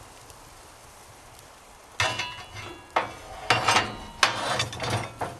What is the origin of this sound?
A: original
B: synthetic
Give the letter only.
A